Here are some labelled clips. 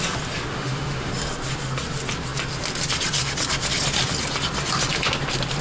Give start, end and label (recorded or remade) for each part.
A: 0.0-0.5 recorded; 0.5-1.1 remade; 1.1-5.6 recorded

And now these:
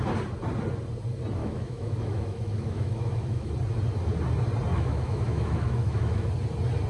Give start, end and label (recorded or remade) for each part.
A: 0.0-1.4 recorded; 1.4-3.5 remade; 3.5-4.7 recorded; 4.7-6.3 remade; 6.3-6.9 recorded

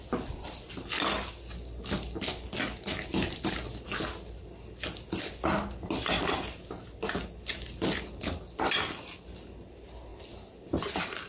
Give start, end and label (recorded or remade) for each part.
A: 0.0-11.3 recorded